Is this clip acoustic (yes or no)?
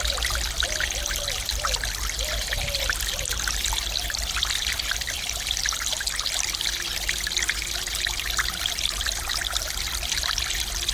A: yes